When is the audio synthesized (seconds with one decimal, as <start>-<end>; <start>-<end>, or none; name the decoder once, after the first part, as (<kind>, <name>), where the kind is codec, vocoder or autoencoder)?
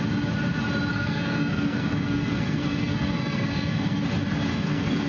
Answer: 0.9-4.0 (codec, SNAC); 4.5-5.1